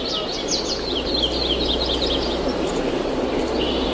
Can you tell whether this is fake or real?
real